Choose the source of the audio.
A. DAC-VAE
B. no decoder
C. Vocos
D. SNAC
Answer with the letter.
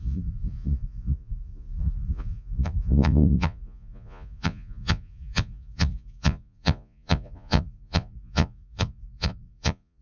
C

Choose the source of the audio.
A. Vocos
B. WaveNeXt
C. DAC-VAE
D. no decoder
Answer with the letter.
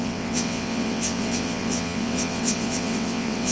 B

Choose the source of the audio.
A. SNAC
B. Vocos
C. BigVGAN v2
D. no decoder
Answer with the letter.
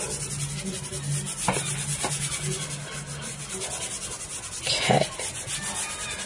D